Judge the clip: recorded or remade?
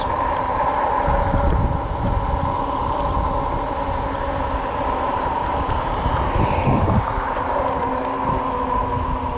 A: recorded